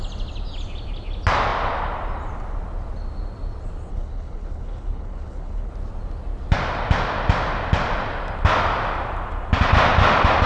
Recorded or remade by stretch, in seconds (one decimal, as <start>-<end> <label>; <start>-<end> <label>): 0.0-3.9 recorded; 3.9-5.7 remade; 5.7-10.5 recorded